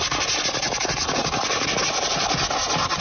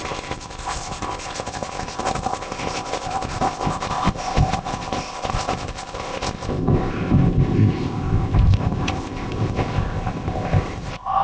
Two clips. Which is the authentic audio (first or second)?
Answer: first